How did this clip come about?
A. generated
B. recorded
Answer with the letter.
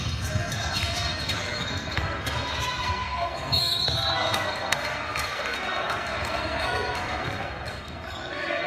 A